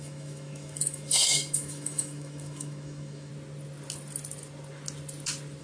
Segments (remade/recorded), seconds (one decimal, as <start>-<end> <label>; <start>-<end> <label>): 0.0-3.3 remade; 3.3-5.6 recorded